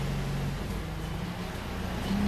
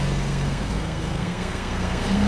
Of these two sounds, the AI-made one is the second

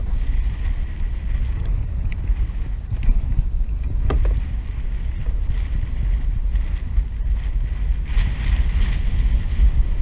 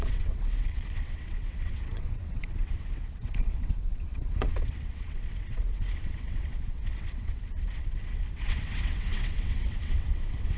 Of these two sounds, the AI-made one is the second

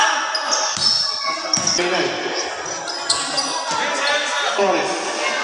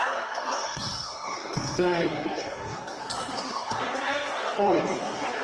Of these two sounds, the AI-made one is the second